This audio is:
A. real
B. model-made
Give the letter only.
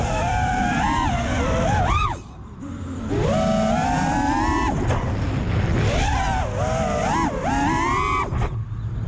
A